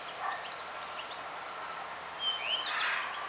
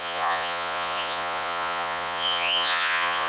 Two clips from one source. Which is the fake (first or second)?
second